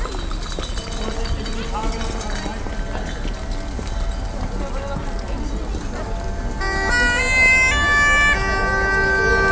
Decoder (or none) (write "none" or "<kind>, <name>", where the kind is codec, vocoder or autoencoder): none